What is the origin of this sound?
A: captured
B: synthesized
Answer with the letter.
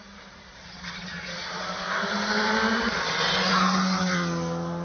A